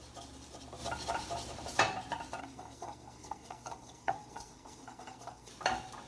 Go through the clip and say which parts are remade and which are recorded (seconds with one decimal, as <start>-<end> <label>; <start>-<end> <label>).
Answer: 0.0-2.4 recorded; 2.4-5.5 remade; 5.5-6.1 recorded

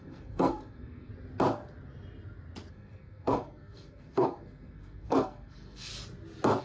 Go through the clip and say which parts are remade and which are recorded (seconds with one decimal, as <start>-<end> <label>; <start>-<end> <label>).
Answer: 0.0-1.1 remade; 1.1-2.7 recorded; 2.7-5.9 remade; 5.9-6.6 recorded

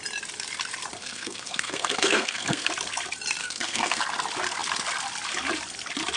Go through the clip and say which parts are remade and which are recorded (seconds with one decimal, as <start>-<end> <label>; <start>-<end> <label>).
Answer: 0.0-1.0 recorded; 1.0-2.7 remade; 2.7-3.4 recorded; 3.4-4.0 remade; 4.0-6.2 recorded

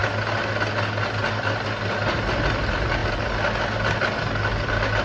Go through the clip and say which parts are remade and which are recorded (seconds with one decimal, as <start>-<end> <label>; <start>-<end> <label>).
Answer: 0.0-5.0 recorded

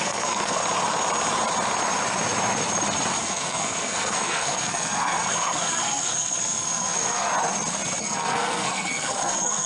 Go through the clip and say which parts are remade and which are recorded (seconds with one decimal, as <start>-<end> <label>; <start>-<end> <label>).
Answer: 0.0-0.6 remade; 0.6-3.2 recorded; 3.2-7.3 remade; 7.3-8.0 recorded; 8.0-9.7 remade

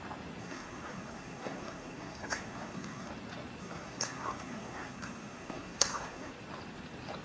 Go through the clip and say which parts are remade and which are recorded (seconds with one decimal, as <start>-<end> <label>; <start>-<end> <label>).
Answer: 0.0-0.4 recorded; 0.4-3.1 remade; 3.1-3.6 recorded; 3.6-6.3 remade; 6.3-7.2 recorded

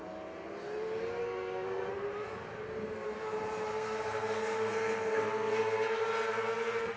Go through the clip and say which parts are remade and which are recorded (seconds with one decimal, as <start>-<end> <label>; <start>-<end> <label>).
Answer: 0.0-1.2 recorded; 1.2-1.9 remade; 1.9-3.7 recorded; 3.7-6.0 remade; 6.0-7.0 recorded

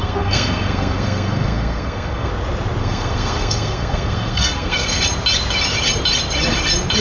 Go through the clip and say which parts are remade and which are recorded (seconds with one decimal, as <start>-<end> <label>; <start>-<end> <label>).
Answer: 0.0-2.3 remade; 2.3-2.8 recorded; 2.8-5.0 remade; 5.0-7.0 recorded